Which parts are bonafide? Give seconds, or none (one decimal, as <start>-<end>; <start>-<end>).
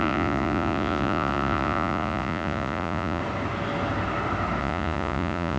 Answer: 3.2-4.6